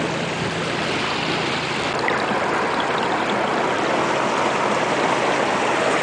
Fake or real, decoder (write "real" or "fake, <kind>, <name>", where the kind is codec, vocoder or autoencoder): real